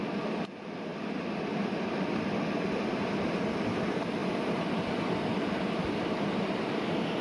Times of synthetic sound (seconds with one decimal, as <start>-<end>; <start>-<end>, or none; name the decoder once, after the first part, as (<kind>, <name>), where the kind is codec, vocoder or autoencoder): 0.9-2.4 (vocoder, BigVGAN v2); 4.2-5.6